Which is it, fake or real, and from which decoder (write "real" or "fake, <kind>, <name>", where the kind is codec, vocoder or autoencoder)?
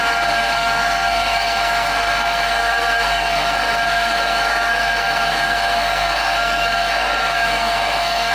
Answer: fake, codec, SNAC